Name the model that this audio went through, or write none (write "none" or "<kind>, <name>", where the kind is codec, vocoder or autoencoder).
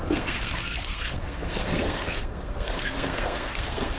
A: codec, SNAC